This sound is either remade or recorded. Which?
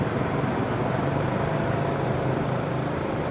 remade